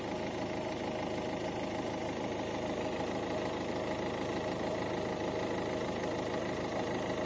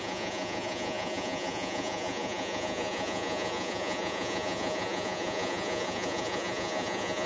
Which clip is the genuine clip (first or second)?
first